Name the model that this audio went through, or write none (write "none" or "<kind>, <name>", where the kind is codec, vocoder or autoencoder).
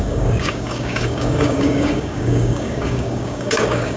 codec, DAC